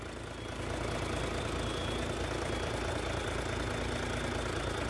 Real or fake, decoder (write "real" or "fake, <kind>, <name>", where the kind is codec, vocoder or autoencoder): real